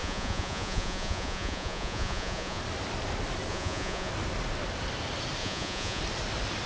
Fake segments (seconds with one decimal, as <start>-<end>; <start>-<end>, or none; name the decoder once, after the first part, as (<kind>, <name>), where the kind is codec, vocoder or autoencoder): 0.0-2.6 (vocoder, Vocos); 3.5-4.1; 5.4-6.0